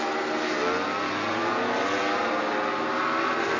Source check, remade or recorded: recorded